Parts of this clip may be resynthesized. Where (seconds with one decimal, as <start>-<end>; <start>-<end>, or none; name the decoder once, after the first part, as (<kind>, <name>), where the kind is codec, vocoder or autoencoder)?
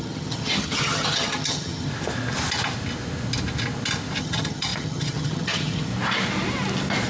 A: 0.0-1.9 (vocoder, HiFi-GAN); 4.2-5.9